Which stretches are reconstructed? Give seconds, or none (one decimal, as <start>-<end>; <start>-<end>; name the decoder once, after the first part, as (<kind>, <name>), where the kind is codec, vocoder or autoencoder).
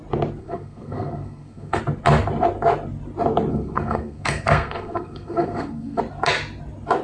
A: 0.4-1.8 (codec, SNAC); 3.5-6.0